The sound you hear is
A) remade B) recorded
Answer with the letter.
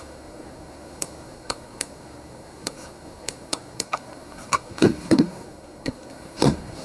A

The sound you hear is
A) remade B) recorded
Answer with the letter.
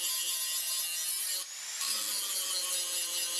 B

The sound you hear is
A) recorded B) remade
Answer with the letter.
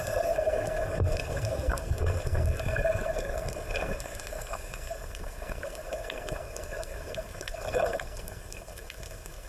B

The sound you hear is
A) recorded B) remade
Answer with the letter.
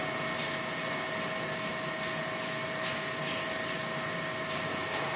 A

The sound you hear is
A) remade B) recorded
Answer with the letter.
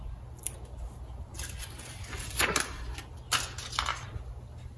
B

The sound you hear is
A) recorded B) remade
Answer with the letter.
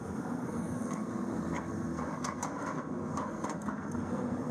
B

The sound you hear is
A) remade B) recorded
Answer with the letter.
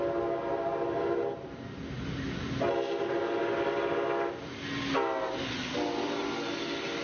B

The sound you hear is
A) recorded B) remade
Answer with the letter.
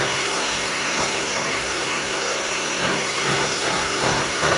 B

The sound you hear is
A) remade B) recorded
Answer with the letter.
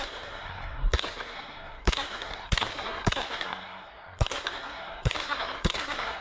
A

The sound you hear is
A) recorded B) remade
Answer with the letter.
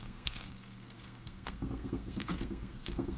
B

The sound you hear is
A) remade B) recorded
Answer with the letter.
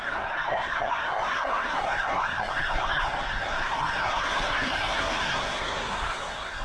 A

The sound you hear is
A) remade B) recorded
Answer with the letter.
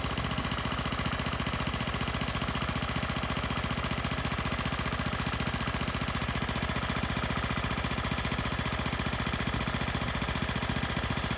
B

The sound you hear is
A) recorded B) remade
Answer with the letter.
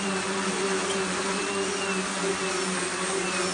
A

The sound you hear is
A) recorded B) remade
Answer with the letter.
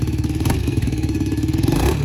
B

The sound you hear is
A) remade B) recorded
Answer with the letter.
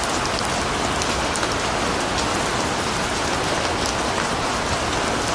B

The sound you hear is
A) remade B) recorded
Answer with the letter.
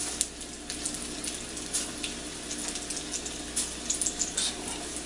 B